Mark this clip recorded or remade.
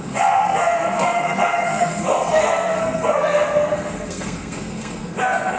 remade